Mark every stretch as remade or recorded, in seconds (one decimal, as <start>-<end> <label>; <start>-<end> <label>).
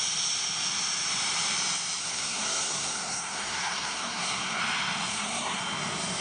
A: 0.0-2.0 recorded; 2.0-4.6 remade; 4.6-5.1 recorded; 5.1-5.6 remade; 5.6-6.2 recorded